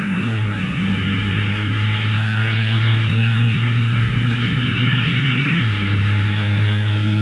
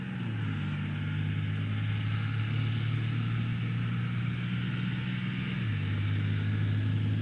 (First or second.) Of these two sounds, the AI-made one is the first